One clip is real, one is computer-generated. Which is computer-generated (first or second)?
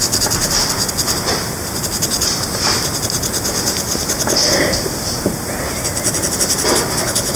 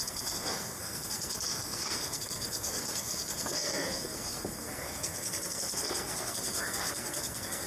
second